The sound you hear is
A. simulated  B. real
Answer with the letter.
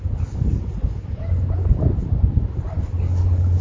B